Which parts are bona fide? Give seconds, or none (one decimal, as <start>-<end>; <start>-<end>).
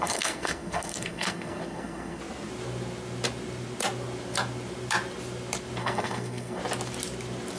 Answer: 2.2-5.8; 6.6-7.6